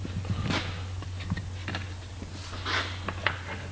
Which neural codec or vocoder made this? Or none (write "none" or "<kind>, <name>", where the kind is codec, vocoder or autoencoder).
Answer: none